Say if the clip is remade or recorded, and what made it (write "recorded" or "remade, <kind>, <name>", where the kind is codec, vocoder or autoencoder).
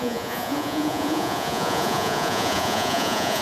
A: remade, vocoder, Vocos